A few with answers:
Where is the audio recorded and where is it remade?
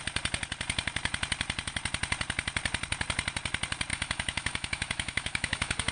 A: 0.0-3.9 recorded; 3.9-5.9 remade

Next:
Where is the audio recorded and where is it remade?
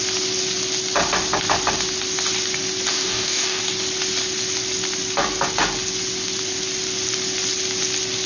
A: 0.0-2.9 recorded; 2.9-3.6 remade; 3.6-8.3 recorded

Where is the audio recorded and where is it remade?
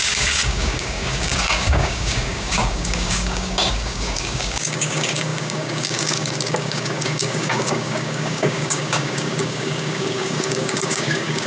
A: 0.0-11.5 remade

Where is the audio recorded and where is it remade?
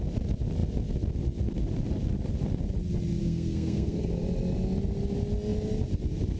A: 0.0-3.2 recorded; 3.2-4.1 remade; 4.1-6.4 recorded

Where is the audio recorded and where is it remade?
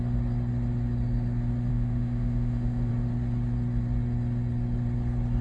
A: 0.0-1.7 recorded; 1.7-2.9 remade; 2.9-5.4 recorded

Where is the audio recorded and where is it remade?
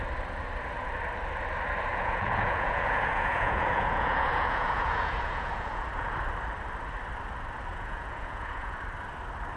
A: 0.0-1.9 recorded; 1.9-6.1 remade; 6.1-7.7 recorded; 7.7-8.8 remade; 8.8-9.6 recorded